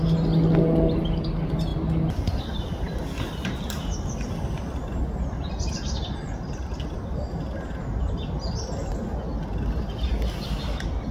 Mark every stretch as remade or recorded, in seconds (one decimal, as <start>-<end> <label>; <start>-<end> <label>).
0.0-11.1 recorded